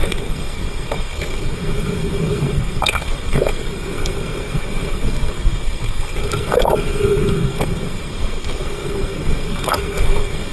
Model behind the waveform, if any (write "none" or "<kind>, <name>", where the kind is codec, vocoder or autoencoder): codec, SNAC